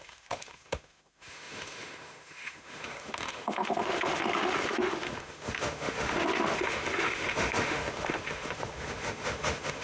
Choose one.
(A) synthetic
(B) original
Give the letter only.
A